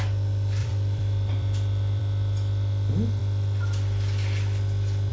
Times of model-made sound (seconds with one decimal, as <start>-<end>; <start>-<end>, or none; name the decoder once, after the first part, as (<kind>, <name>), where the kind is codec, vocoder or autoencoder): 0.6-2.0 (vocoder, BigVGAN v2)